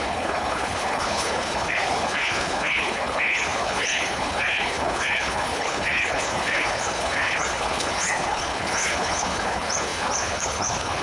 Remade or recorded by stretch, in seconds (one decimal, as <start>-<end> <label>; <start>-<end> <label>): 0.0-11.0 remade